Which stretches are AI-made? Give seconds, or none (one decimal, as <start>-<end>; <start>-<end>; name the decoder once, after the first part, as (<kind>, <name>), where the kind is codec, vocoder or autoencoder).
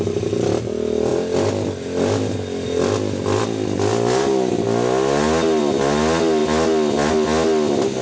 none